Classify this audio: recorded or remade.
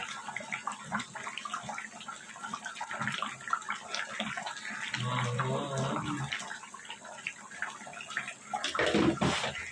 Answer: recorded